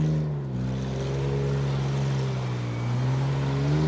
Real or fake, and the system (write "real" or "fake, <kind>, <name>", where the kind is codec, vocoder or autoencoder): real